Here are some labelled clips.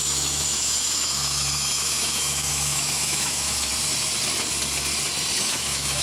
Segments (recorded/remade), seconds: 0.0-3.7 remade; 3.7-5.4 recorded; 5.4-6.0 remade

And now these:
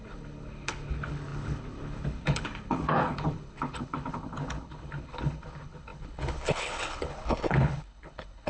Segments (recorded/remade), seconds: 0.0-8.5 remade

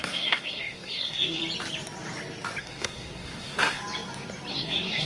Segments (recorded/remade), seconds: 0.0-1.4 remade; 1.4-2.6 recorded; 2.6-3.8 remade; 3.8-4.5 recorded; 4.5-5.1 remade

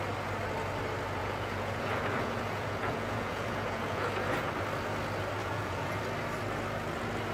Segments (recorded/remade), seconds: 0.0-1.2 recorded; 1.2-4.5 remade; 4.5-5.4 recorded; 5.4-6.0 remade; 6.0-7.3 recorded